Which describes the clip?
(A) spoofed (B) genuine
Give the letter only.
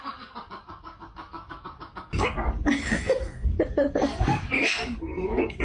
A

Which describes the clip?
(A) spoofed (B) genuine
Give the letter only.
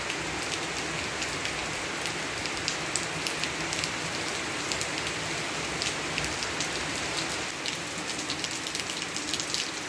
B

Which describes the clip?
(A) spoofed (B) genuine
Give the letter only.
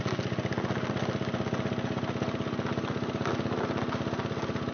B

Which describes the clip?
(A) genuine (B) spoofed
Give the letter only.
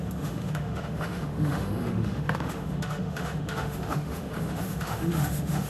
B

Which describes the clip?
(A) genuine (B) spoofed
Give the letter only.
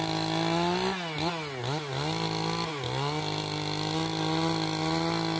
A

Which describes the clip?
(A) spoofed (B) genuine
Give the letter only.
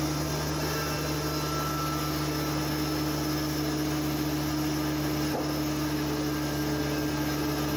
B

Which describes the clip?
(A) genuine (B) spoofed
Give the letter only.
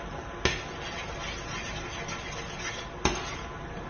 A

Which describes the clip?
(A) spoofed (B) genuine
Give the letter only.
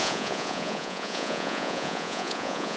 A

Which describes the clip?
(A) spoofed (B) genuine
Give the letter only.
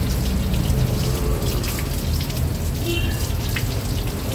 B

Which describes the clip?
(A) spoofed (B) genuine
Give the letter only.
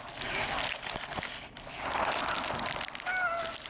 B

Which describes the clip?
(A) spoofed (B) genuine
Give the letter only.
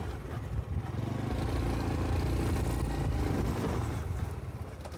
B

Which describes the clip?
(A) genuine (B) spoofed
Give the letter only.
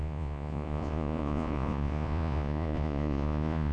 B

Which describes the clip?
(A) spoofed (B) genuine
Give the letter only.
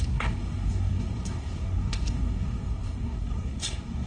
A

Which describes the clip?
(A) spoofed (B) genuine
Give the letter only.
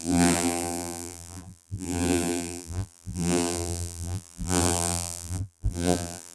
A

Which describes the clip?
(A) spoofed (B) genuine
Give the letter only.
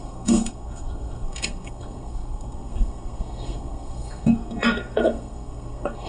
A